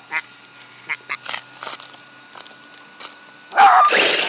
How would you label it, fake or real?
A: real